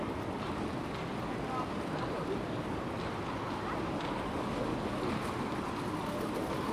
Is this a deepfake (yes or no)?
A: no